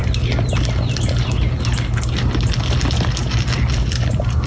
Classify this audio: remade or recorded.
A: recorded